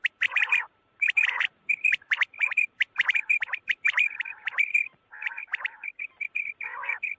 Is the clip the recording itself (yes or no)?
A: no